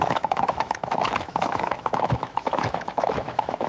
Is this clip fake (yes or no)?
yes